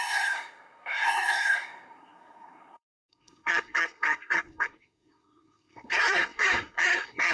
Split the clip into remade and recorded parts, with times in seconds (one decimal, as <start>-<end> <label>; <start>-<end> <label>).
0.0-7.3 remade